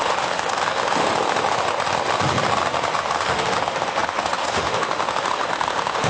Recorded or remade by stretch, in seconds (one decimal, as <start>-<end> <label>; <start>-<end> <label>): 0.0-1.1 remade; 1.1-3.3 recorded; 3.3-6.1 remade